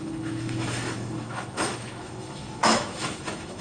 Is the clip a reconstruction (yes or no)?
yes